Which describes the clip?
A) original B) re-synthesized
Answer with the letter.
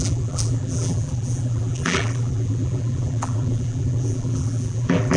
B